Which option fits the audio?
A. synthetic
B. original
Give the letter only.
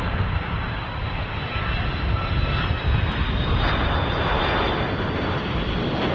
B